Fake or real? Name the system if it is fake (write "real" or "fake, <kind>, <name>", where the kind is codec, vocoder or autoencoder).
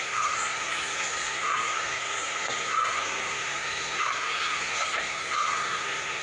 fake, codec, SNAC